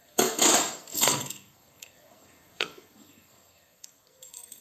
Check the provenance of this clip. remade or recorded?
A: remade